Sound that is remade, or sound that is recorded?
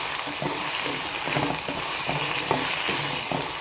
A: recorded